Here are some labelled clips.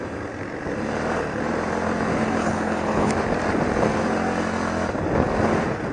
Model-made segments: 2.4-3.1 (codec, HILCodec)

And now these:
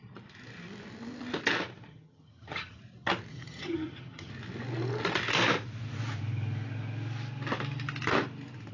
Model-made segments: 1.9-2.8 (vocoder, HiFi-GAN); 3.3-4.3

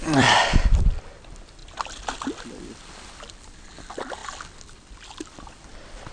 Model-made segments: none

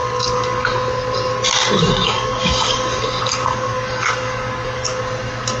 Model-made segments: 0.0-0.7 (codec, DAC); 1.6-5.0

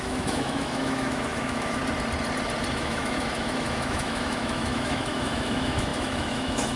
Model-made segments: 0.0-1.8 (autoencoder, DAC-VAE); 2.7-6.8